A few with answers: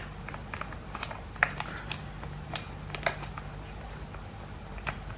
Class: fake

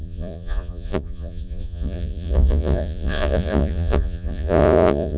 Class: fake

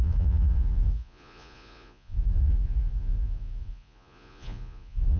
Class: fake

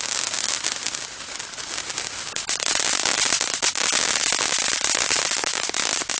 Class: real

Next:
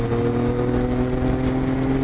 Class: real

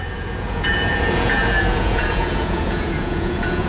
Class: fake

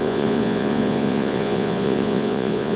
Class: fake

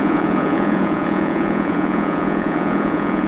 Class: fake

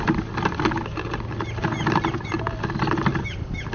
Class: real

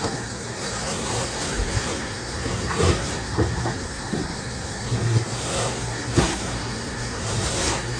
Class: fake